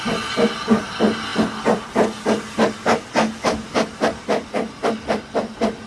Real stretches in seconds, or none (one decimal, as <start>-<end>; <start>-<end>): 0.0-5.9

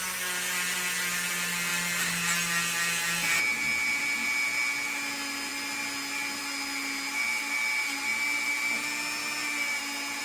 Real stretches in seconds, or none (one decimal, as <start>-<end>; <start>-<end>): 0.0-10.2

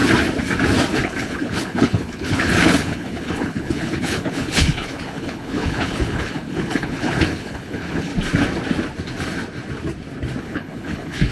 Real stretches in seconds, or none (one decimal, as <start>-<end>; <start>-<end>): 0.0-0.9; 8.1-10.4

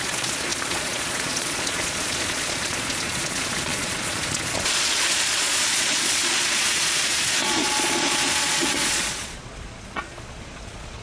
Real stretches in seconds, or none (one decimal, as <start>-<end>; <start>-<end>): none

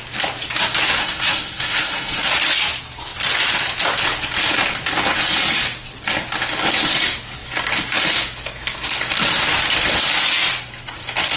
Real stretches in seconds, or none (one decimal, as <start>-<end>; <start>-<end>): 0.0-1.0; 2.3-11.4

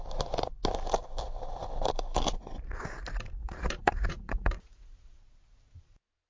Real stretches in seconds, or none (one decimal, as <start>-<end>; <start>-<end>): 0.0-3.4; 5.2-6.3

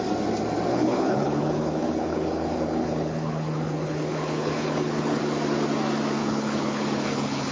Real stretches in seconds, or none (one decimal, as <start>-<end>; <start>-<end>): 0.0-0.7; 5.2-6.2